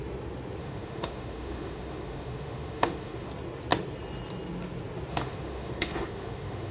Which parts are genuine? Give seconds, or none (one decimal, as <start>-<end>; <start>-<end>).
0.0-0.6; 3.3-5.1